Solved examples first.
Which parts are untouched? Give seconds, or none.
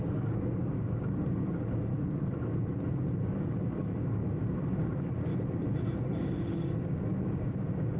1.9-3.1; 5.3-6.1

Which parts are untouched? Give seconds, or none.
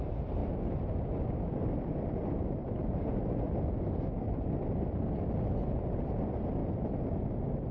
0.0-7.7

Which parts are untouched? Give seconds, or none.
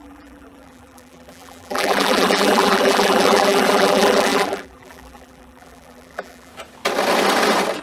6.5-7.8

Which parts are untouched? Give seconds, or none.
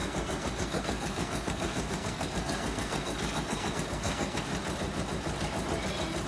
4.5-6.3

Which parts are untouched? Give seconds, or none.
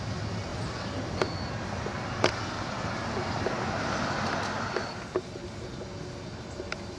0.0-7.0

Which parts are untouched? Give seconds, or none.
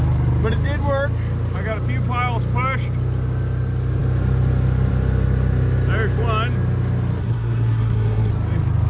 0.0-7.2; 8.3-8.9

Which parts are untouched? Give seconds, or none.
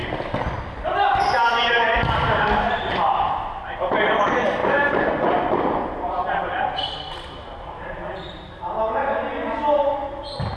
3.3-4.6; 8.8-10.6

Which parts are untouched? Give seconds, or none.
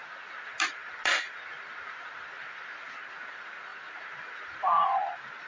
0.0-5.5